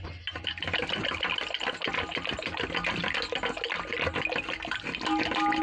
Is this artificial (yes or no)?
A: no